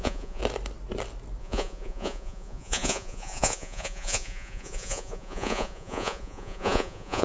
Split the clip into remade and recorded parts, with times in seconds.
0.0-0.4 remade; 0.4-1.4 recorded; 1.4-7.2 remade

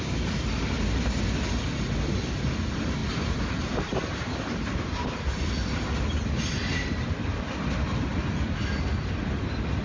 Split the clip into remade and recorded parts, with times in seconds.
0.0-3.0 recorded; 3.0-4.9 remade; 4.9-9.8 recorded

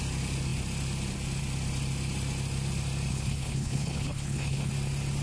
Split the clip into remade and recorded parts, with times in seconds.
0.0-3.1 recorded; 3.1-4.7 remade; 4.7-5.2 recorded

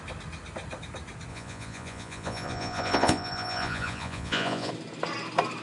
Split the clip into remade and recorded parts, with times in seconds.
0.0-1.3 recorded; 1.3-4.7 remade; 4.7-5.6 recorded

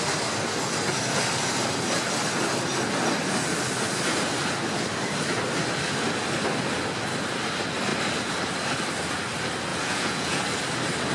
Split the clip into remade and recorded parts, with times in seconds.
0.0-9.7 recorded; 9.7-10.4 remade; 10.4-11.1 recorded

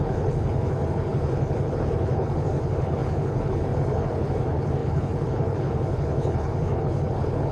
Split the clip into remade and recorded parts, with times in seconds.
0.0-7.5 remade

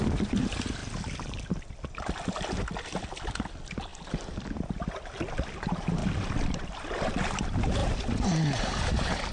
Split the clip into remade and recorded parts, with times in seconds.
0.0-3.9 recorded; 3.9-4.8 remade; 4.8-6.0 recorded; 6.0-7.1 remade; 7.1-9.3 recorded

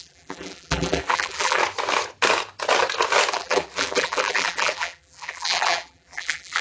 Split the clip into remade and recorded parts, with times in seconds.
0.0-1.6 remade; 1.6-3.3 recorded; 3.3-6.6 remade